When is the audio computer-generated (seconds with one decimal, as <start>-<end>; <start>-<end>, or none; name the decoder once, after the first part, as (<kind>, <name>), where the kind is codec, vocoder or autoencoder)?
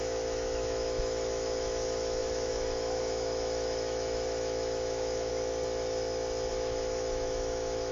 0.0-5.3 (autoencoder, DAC-VAE); 6.5-7.9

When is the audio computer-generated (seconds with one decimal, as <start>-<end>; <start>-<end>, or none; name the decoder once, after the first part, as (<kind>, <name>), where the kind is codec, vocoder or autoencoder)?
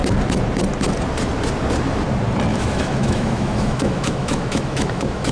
2.5-5.3 (autoencoder, DAC-VAE)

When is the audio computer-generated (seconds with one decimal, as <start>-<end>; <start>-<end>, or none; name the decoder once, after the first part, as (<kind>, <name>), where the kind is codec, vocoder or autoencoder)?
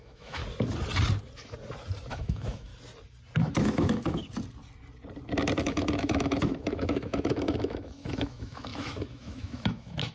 0.0-0.4 (autoencoder, DAC-VAE); 2.1-2.7; 3.6-4.2; 5.6-10.1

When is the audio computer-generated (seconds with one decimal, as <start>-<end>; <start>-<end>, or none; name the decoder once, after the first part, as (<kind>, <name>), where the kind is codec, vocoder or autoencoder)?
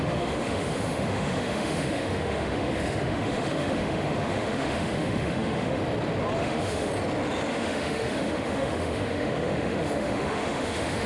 0.0-5.8 (autoencoder, DAC-VAE); 6.4-6.9; 7.5-11.1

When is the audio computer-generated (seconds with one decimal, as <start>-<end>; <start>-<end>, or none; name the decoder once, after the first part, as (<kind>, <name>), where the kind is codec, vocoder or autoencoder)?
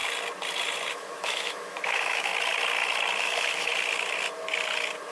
0.9-2.3 (autoencoder, DAC-VAE); 3.2-3.7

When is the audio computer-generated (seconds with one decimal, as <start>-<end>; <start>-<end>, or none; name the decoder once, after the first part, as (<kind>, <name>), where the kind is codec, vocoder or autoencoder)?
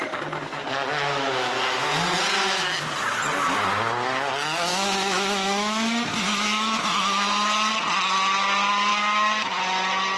0.9-1.5 (autoencoder, DAC-VAE); 4.7-7.7; 8.9-9.6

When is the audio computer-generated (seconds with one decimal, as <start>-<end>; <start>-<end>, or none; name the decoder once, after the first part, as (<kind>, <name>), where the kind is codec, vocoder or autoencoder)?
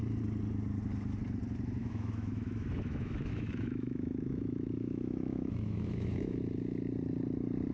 1.8-6.4 (autoencoder, DAC-VAE)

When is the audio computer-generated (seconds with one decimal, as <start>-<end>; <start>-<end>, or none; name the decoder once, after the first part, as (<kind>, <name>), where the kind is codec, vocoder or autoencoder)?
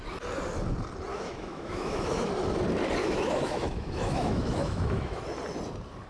1.1-2.3 (autoencoder, DAC-VAE); 3.0-5.2